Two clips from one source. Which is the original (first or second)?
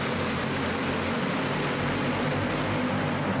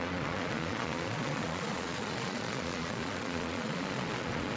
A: first